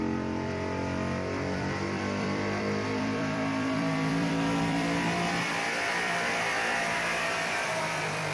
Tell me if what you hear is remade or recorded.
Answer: remade